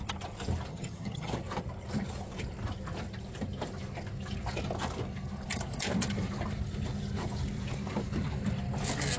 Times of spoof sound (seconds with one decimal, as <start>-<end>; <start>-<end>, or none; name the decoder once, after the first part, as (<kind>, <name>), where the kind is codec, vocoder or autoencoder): 0.7-1.3 (vocoder, HiFi-GAN)